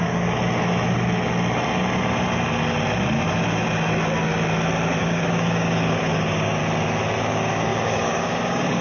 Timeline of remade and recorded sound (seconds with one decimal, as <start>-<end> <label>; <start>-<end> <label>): 0.0-0.4 remade; 0.4-5.0 recorded; 5.0-6.6 remade; 6.6-7.2 recorded; 7.2-8.8 remade